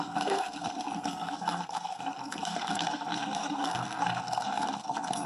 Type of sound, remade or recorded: remade